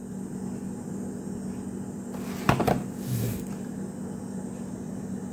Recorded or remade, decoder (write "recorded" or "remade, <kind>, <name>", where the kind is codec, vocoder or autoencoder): recorded